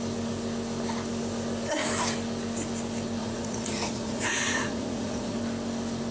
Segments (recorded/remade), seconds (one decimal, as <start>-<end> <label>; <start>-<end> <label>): 0.0-3.2 recorded; 3.2-5.4 remade; 5.4-6.1 recorded